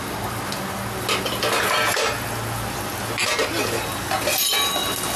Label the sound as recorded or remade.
recorded